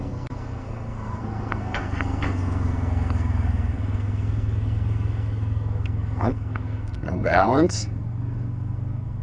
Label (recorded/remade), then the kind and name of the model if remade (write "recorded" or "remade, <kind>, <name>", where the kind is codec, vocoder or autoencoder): remade, codec, SNAC